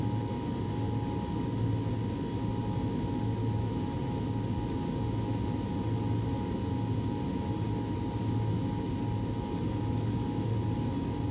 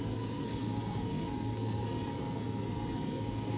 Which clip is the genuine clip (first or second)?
first